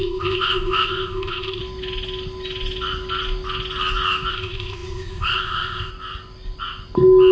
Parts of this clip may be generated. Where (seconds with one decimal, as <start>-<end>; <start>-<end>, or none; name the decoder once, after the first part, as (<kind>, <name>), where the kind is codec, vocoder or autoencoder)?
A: 0.0-1.6 (codec, ZipCodec); 4.3-5.9

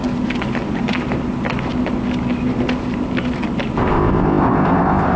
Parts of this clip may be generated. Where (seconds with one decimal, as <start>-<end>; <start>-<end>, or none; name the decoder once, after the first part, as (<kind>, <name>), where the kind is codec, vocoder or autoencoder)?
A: 3.8-5.2 (codec, ZipCodec)

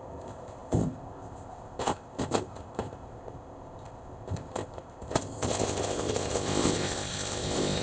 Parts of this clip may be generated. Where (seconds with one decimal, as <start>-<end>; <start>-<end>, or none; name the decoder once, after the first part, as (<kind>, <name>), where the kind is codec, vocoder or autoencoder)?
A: 0.0-7.8 (codec, ZipCodec)

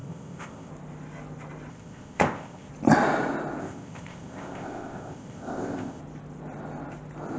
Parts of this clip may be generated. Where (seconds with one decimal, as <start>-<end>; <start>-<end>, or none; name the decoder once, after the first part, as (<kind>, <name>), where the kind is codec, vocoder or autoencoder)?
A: 0.0-0.7 (codec, ZipCodec); 1.7-2.7; 3.6-6.0